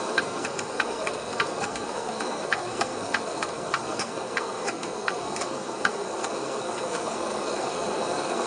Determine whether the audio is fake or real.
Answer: fake